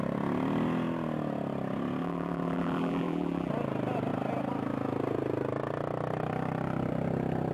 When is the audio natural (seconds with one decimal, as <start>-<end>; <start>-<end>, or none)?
0.0-2.0; 3.5-7.5